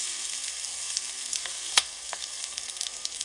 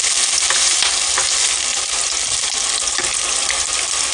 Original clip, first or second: second